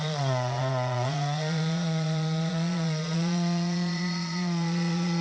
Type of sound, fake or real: fake